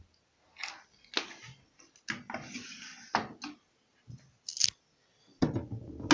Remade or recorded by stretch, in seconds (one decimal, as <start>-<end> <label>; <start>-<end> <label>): 0.0-6.1 recorded

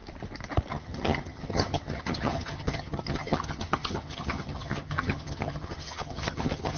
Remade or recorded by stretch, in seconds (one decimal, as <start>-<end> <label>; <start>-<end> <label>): 0.0-0.7 recorded; 0.7-6.8 remade

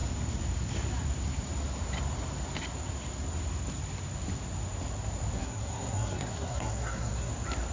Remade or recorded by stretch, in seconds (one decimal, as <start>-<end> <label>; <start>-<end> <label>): 0.0-5.4 recorded; 5.4-7.3 remade; 7.3-7.7 recorded

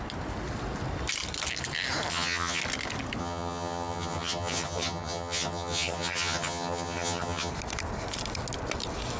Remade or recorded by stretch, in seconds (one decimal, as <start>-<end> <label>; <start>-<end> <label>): 0.0-2.1 recorded; 2.1-2.6 remade; 2.6-3.2 recorded; 3.2-7.5 remade; 7.5-9.2 recorded

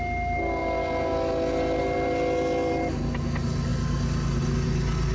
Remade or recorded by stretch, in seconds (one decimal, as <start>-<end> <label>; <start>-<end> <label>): 0.0-5.1 recorded

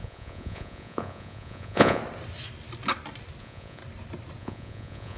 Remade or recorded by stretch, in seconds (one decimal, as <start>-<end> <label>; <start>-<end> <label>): 0.0-2.0 remade; 2.0-3.4 recorded; 3.4-3.8 remade; 3.8-4.4 recorded; 4.4-5.2 remade

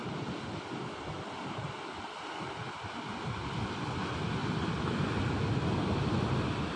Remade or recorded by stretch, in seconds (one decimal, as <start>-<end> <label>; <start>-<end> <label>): 0.0-0.7 remade; 0.7-4.4 recorded; 4.4-5.2 remade; 5.2-6.8 recorded